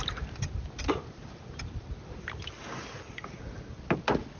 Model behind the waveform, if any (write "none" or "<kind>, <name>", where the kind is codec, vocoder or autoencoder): none